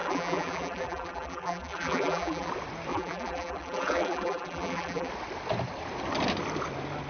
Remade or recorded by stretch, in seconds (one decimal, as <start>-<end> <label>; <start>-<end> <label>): 0.0-2.5 remade; 2.5-2.9 recorded; 2.9-5.1 remade; 5.1-7.1 recorded